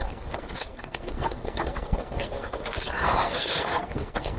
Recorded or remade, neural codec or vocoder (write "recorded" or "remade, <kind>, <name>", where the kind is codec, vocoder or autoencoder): remade, codec, SNAC